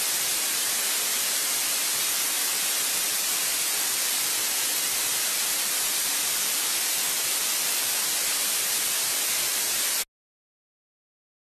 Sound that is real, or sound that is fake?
real